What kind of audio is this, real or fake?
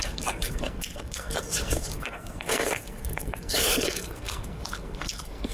fake